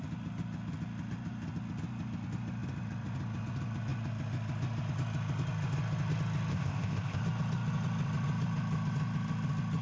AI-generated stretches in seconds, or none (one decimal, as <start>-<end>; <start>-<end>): 6.5-7.2